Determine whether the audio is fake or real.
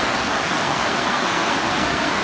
fake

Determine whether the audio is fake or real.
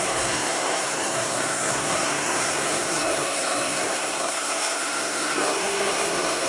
fake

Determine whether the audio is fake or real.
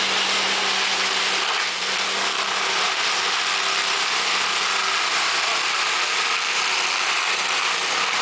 real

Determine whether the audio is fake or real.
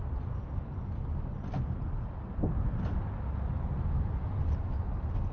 real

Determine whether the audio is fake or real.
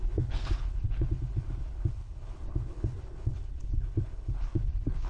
fake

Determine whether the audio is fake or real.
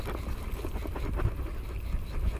real